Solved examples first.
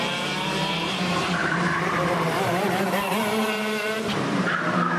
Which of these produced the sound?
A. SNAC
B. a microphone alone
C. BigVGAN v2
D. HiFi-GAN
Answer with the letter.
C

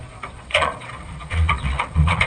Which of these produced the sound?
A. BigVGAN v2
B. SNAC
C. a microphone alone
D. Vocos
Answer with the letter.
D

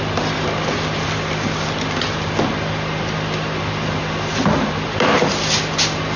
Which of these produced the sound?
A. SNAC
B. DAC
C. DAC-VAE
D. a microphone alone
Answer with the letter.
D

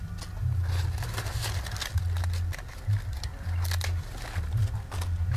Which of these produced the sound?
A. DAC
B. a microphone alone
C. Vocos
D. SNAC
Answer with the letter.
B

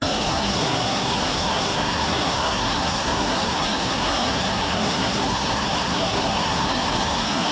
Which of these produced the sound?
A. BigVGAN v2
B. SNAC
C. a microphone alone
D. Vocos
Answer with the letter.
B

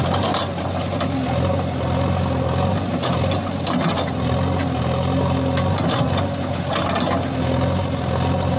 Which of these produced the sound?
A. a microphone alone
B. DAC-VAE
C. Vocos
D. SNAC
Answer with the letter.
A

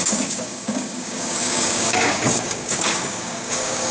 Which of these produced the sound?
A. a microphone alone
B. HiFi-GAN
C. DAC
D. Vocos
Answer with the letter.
C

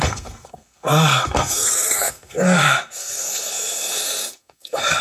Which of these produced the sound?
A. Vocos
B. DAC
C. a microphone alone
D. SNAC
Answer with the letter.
D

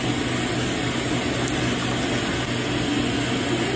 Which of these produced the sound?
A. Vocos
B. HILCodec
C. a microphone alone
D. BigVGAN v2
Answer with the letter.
C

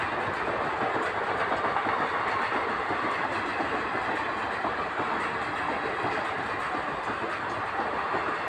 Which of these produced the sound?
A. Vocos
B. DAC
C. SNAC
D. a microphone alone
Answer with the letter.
D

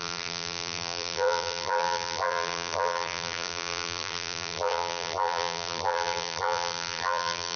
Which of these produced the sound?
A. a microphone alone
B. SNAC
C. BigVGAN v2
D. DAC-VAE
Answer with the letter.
C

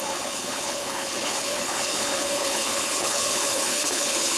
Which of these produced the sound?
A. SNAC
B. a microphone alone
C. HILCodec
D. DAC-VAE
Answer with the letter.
C